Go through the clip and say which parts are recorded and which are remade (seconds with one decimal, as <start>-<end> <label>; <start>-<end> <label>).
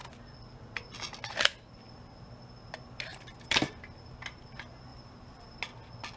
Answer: 0.0-3.1 recorded; 3.1-3.7 remade; 3.7-4.9 recorded; 4.9-5.6 remade; 5.6-6.2 recorded